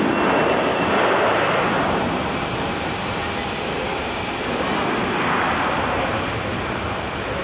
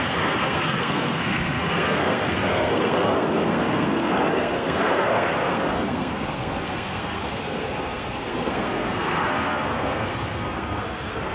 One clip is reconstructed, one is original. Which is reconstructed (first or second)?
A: second